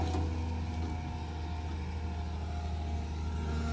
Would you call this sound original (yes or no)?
yes